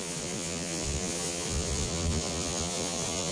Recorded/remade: remade